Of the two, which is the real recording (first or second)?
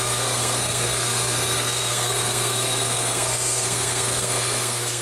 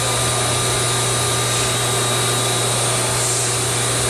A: second